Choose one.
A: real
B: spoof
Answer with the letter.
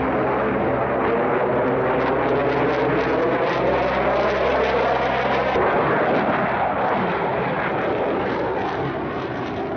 A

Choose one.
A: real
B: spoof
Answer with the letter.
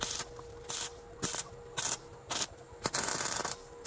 A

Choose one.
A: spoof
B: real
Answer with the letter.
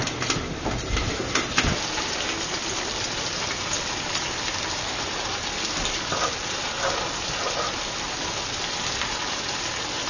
B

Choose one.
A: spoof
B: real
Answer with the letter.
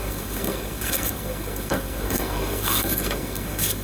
A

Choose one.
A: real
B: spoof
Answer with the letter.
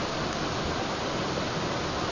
A